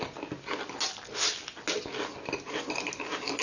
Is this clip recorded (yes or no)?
yes